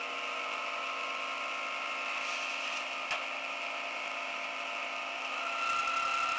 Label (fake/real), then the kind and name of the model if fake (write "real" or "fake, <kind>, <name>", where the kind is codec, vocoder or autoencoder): real